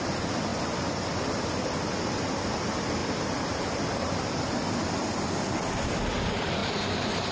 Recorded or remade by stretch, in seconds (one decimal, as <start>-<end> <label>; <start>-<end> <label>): 0.0-3.0 recorded; 3.0-4.4 remade; 4.4-7.3 recorded